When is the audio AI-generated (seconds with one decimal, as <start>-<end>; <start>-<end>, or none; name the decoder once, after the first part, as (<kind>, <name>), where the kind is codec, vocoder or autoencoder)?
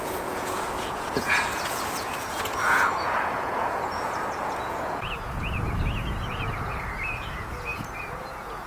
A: 0.0-8.7 (vocoder, Vocos)